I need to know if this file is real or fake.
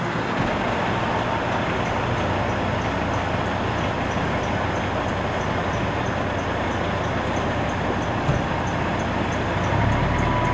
real